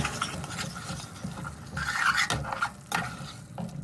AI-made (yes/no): no